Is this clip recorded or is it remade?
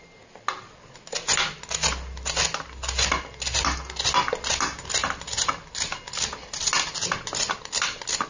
recorded